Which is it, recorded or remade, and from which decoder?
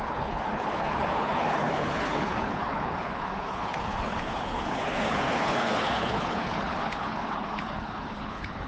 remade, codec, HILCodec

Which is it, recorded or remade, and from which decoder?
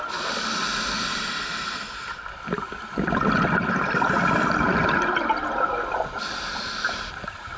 recorded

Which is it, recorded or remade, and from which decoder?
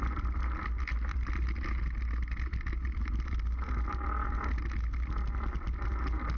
recorded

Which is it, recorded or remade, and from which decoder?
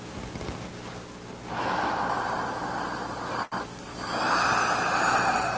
recorded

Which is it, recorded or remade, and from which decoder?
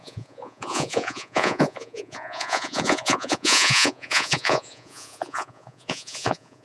remade, vocoder, Vocos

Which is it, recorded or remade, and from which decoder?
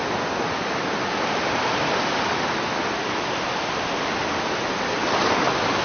recorded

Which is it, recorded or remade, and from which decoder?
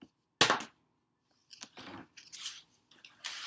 recorded